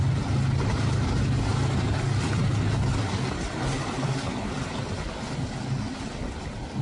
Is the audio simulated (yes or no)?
no